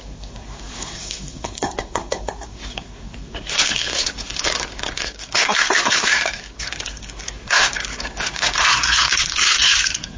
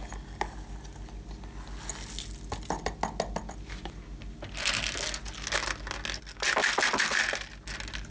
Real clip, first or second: second